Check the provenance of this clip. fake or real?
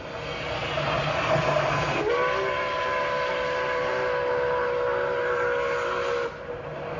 real